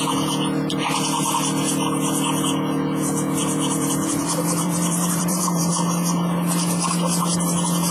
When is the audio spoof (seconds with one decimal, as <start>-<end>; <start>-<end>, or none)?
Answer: 3.4-5.7